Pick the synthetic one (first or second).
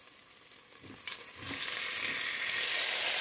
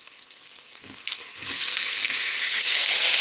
second